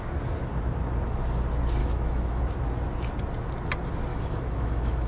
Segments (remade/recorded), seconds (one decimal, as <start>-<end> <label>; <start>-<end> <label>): 0.0-1.8 recorded; 1.8-2.4 remade; 2.4-4.1 recorded; 4.1-5.1 remade